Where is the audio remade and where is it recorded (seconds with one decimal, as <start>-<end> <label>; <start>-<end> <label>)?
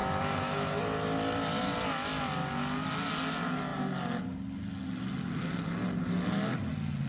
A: 0.0-0.8 remade; 0.8-7.1 recorded